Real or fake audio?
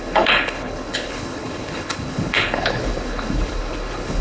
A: fake